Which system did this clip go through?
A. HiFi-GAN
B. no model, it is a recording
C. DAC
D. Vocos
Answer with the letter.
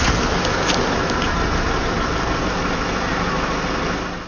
B